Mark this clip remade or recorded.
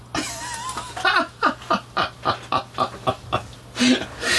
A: recorded